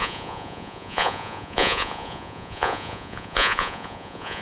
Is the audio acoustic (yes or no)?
no